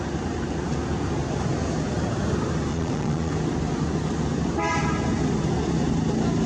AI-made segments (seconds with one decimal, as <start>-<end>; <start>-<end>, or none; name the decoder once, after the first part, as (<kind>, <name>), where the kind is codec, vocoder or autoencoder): 2.7-3.3 (vocoder, Vocos)